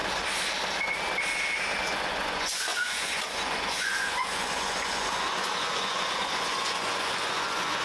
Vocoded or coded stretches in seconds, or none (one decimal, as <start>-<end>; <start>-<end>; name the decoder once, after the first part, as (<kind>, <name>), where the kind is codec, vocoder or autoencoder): 1.8-7.8 (vocoder, Vocos)